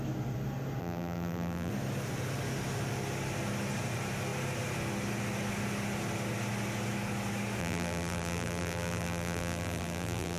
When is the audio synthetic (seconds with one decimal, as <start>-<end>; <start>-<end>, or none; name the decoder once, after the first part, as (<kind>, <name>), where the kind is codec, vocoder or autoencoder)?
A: 0.8-1.7 (vocoder, BigVGAN v2); 7.6-10.4